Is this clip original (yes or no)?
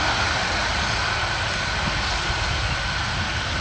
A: yes